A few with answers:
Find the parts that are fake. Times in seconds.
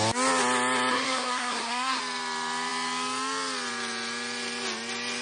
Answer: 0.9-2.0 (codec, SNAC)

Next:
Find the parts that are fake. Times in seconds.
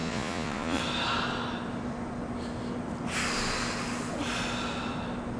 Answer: 0.0-0.8 (vocoder, Vocos)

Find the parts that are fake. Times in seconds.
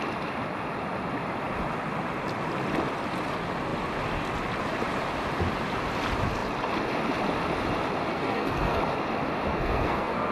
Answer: 8.1-8.8 (codec, SNAC); 9.5-10.3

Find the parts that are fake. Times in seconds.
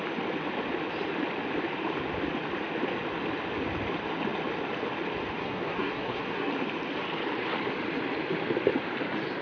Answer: 5.4-6.5 (codec, SNAC)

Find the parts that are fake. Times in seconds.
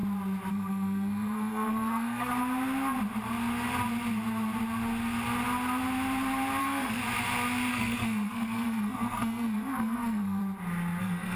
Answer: 0.5-2.3 (codec, SNAC); 6.6-7.0; 7.7-10.4; 11.0-11.4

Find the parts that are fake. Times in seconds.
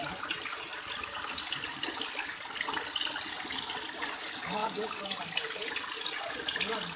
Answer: 4.6-5.2 (vocoder, BigVGAN v2)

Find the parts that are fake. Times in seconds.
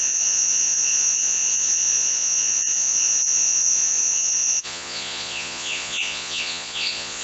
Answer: 0.0-7.2 (vocoder, Vocos)